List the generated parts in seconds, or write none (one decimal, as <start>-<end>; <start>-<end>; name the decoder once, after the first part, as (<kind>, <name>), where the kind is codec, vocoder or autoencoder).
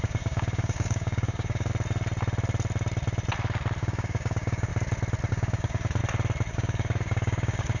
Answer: 0.0-1.7 (codec, DAC); 3.8-4.7; 5.3-6.0; 6.5-7.8